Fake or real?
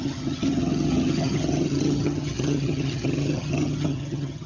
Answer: fake